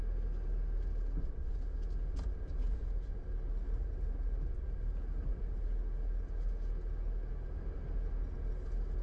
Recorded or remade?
recorded